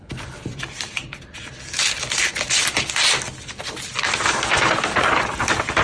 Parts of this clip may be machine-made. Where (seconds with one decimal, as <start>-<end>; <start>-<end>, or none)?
0.4-1.4